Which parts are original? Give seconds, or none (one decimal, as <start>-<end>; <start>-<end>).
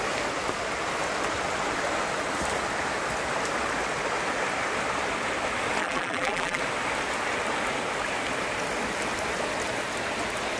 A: 0.0-5.8; 6.6-10.6